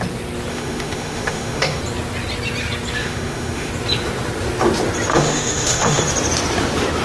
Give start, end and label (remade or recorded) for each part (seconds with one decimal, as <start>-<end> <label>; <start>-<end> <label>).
0.0-0.5 recorded; 0.5-1.8 remade; 1.8-3.0 recorded; 3.0-3.7 remade; 3.7-5.1 recorded; 5.1-6.0 remade; 6.0-7.0 recorded